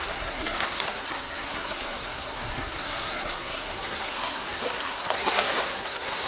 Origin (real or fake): fake